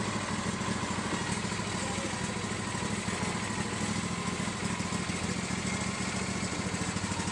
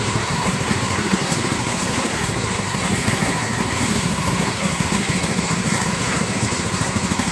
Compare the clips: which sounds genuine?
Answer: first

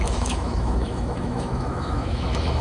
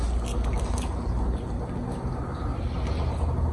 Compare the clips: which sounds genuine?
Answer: second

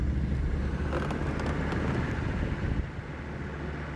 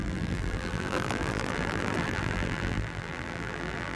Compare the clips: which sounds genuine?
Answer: first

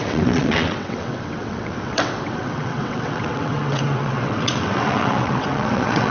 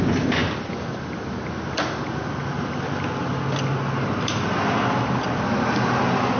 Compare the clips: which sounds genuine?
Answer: second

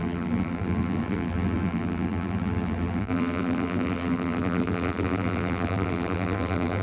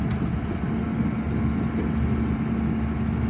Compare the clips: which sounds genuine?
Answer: second